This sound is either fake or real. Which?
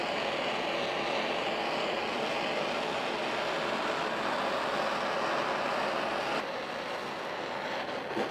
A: real